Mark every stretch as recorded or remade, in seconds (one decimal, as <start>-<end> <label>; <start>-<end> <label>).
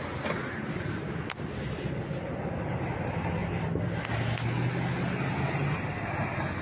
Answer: 0.0-6.6 recorded